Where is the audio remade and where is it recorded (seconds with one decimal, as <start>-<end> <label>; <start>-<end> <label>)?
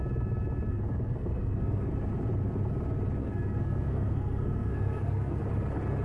0.0-0.7 recorded; 0.7-1.9 remade; 1.9-3.2 recorded; 3.2-5.4 remade; 5.4-6.0 recorded